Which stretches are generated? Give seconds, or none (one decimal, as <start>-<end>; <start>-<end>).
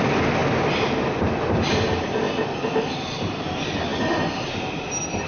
none